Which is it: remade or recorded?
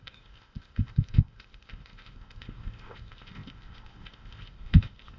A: remade